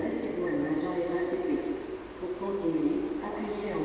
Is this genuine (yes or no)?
yes